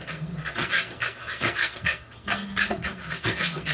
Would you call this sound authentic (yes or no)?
no